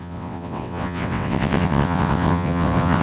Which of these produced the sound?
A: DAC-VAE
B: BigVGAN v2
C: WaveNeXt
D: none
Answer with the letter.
C